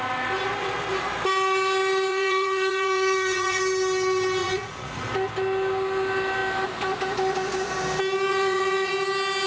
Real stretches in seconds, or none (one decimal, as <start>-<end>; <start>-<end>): 0.0-2.1; 3.6-4.4; 5.1-8.3; 8.9-9.5